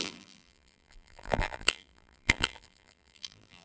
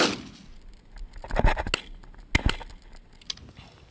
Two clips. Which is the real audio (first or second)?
second